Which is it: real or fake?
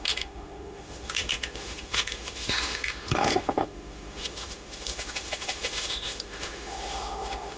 fake